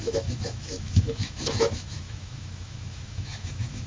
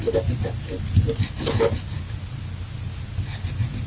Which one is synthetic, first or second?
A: first